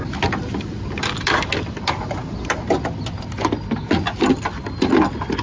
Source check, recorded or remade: recorded